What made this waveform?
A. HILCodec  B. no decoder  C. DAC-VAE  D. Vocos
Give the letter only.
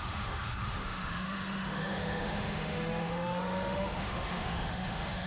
C